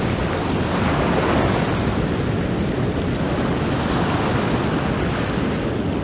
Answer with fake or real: real